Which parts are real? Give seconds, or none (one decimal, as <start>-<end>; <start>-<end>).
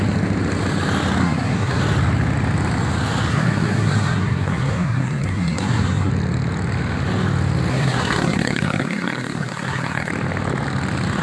0.0-1.2; 1.8-3.3; 6.1-7.7; 10.1-11.2